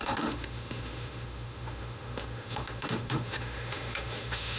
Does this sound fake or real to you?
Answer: fake